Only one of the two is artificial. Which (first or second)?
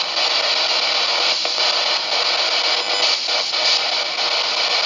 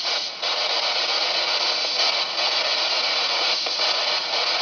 second